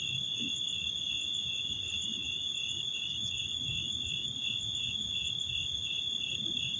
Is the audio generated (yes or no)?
no